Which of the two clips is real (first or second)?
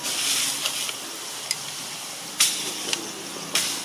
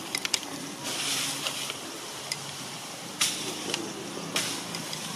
first